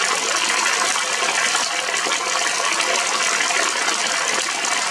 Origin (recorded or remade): recorded